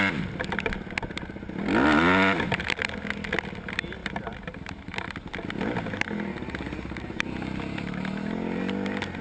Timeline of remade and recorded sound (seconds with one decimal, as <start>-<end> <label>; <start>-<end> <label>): 0.0-4.0 recorded; 4.0-4.8 remade; 4.8-9.2 recorded